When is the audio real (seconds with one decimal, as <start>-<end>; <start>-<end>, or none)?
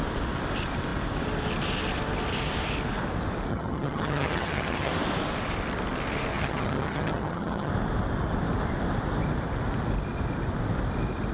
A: 0.0-3.5; 4.9-6.3; 7.7-11.3